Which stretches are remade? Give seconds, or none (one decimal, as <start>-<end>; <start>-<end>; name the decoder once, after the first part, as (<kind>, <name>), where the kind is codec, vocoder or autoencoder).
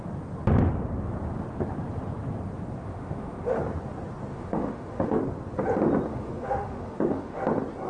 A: 2.8-3.6 (autoencoder, DAC-VAE); 4.3-5.2; 6.1-7.4